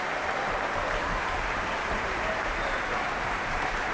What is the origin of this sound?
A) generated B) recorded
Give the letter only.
A